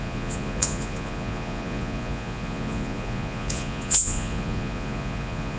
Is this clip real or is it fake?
fake